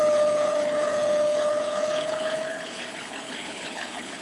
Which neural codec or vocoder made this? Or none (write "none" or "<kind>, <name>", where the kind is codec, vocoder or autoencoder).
codec, HILCodec